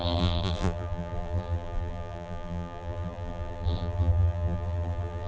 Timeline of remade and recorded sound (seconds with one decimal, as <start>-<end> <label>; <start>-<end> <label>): 0.0-5.3 remade